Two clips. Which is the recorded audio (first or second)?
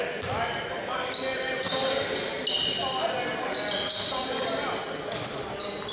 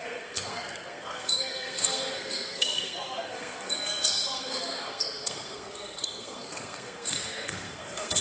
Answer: first